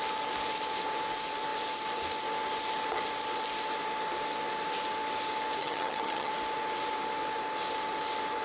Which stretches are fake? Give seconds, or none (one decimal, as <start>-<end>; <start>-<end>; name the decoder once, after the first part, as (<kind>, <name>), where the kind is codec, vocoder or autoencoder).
5.6-6.3 (vocoder, HiFi-GAN)